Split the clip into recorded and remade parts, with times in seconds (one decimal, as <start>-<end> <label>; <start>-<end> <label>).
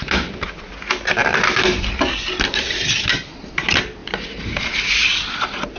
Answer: 0.0-4.0 recorded; 4.0-4.6 remade; 4.6-5.8 recorded